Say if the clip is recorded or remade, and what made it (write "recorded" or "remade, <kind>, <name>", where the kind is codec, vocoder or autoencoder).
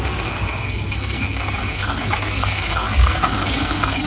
remade, codec, SNAC